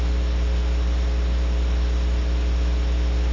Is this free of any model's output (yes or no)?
yes